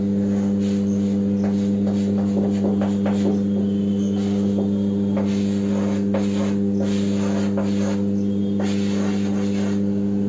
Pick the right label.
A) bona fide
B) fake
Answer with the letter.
A